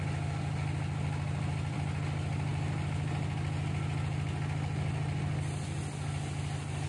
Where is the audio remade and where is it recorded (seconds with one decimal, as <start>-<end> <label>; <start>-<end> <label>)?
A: 0.0-6.9 recorded